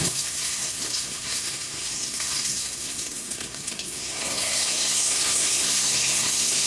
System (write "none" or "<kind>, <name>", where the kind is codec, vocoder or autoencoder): codec, SNAC